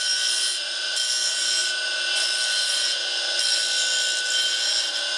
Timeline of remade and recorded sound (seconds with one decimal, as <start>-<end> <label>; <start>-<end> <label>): 0.0-5.2 recorded